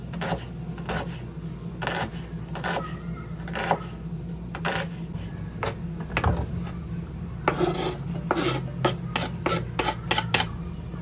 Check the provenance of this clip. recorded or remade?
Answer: recorded